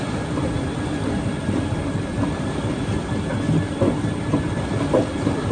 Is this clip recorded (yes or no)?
yes